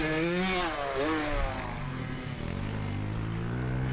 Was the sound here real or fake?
real